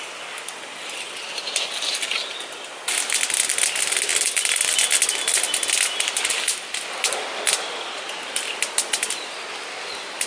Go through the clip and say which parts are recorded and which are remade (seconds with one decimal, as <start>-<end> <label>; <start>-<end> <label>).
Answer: 0.0-10.3 recorded